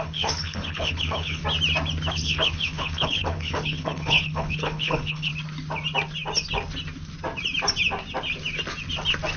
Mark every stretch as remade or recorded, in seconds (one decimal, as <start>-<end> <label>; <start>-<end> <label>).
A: 0.0-1.4 remade; 1.4-2.1 recorded; 2.1-5.3 remade; 5.3-9.4 recorded